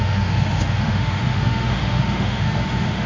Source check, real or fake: fake